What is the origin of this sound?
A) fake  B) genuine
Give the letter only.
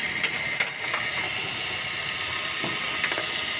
B